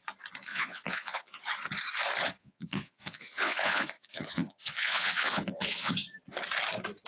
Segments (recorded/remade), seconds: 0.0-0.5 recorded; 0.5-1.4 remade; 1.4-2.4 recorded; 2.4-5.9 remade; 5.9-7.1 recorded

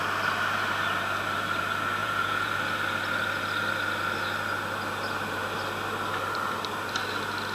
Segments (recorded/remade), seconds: 0.0-2.0 recorded; 2.0-2.5 remade; 2.5-7.5 recorded

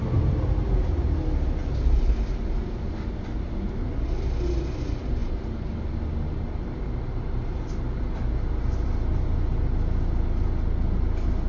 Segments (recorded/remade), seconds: 0.0-11.5 recorded

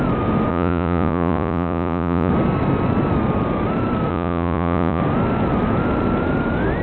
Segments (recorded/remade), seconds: 0.0-0.5 recorded; 0.5-2.3 remade; 2.3-4.1 recorded; 4.1-5.0 remade; 5.0-6.8 recorded

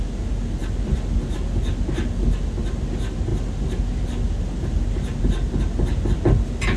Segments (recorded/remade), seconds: 0.0-6.8 recorded